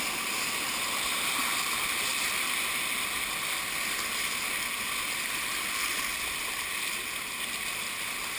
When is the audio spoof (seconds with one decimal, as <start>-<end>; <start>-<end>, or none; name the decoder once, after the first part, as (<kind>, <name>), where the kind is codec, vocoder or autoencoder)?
none